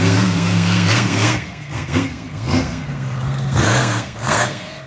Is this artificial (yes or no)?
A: yes